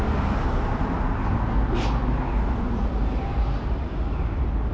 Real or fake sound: real